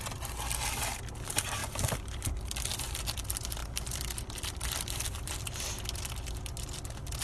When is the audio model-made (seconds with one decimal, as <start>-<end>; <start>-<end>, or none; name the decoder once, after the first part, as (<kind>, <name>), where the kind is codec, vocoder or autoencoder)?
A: 1.6-2.3 (vocoder, BigVGAN v2); 3.6-5.6